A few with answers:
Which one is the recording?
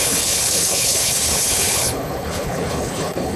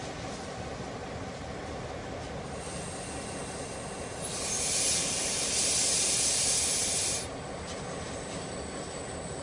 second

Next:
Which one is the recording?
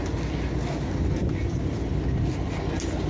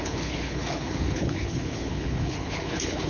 first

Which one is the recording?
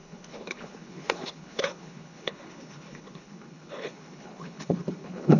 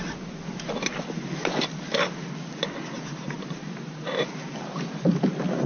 second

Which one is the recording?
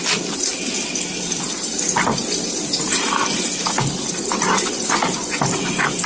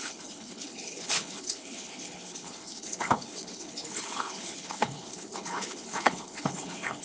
first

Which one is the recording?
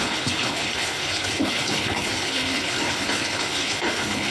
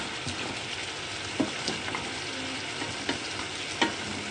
second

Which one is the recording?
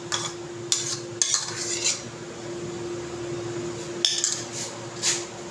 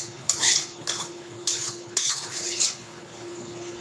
first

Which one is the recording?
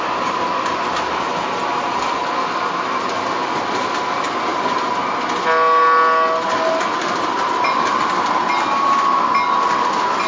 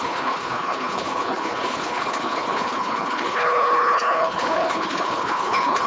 first